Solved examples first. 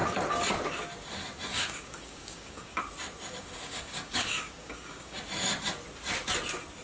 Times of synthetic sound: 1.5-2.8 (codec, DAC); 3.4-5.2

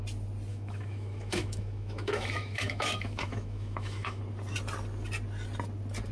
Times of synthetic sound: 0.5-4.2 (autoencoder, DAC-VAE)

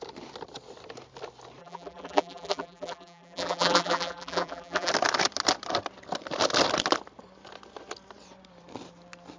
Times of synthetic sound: 1.6-4.9 (vocoder, BigVGAN v2)

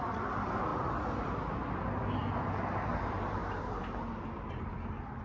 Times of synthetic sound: 0.0-0.7 (vocoder, BigVGAN v2); 1.7-2.2; 2.9-3.4; 4.7-5.2

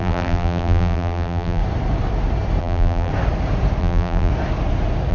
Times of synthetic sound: 0.0-1.6 (vocoder, BigVGAN v2); 2.6-3.1; 3.8-4.3